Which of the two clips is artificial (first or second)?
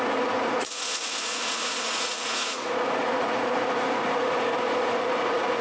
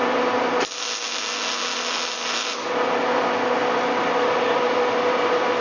first